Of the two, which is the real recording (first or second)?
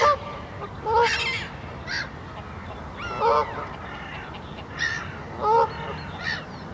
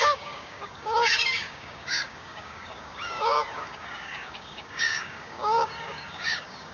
first